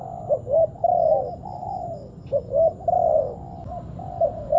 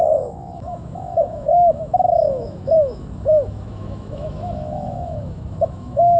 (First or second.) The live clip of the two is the first